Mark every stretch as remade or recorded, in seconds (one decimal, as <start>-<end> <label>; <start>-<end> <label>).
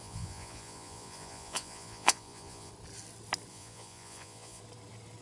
0.0-2.7 remade; 2.7-3.5 recorded; 3.5-4.6 remade; 4.6-5.2 recorded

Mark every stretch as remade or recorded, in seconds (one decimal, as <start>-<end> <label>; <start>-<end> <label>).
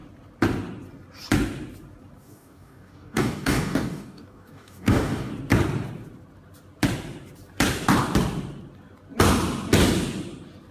0.0-2.2 recorded; 2.2-5.3 remade; 5.3-10.7 recorded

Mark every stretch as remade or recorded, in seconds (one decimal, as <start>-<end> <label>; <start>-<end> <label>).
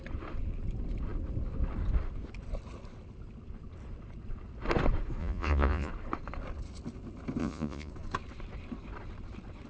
0.0-5.2 recorded; 5.2-5.9 remade; 5.9-7.4 recorded; 7.4-7.9 remade; 7.9-9.7 recorded